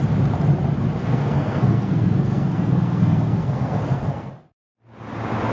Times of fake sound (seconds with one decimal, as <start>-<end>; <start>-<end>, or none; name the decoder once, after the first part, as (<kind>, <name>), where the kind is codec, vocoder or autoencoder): 1.0-4.3 (codec, SNAC)